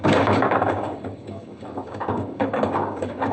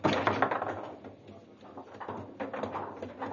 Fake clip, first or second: first